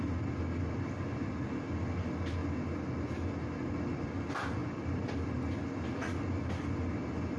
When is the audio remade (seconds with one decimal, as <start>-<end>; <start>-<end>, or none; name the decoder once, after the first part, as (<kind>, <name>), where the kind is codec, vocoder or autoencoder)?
none

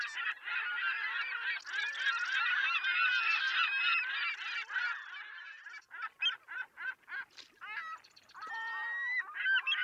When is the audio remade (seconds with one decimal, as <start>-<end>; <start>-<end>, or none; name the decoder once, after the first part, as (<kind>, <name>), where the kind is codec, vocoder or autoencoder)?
none

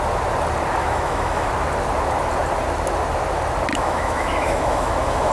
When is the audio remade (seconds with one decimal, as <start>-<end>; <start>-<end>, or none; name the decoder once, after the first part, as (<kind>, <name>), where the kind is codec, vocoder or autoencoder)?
0.8-1.5 (autoencoder, DAC-VAE); 3.7-5.3

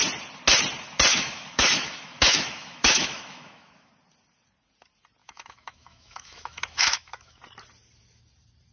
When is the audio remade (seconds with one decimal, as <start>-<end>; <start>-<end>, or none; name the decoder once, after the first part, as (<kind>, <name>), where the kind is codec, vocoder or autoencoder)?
1.1-3.9 (autoencoder, DAC-VAE); 5.2-7.4

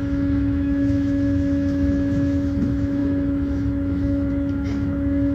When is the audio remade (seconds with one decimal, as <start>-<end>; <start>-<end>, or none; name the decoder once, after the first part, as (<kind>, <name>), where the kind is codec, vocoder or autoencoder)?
0.0-5.3 (autoencoder, DAC-VAE)

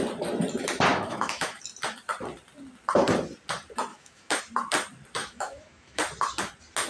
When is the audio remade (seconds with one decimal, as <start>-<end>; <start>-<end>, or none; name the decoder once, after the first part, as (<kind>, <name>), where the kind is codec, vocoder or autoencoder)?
0.9-1.6 (autoencoder, DAC-VAE); 3.9-4.4; 5.2-6.0

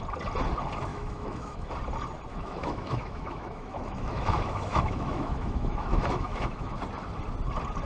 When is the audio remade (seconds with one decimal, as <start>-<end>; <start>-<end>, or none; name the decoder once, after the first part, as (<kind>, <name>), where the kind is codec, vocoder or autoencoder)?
0.9-1.7 (autoencoder, DAC-VAE); 2.3-6.8

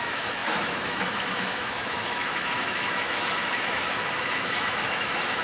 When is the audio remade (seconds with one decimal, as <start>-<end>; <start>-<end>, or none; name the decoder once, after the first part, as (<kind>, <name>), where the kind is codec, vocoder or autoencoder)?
0.0-5.4 (autoencoder, DAC-VAE)